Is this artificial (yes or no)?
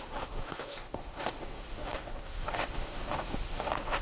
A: yes